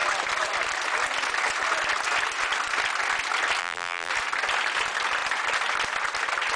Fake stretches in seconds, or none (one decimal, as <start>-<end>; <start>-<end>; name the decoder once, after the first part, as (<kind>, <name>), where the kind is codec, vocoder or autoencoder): 3.6-4.1 (vocoder, BigVGAN v2)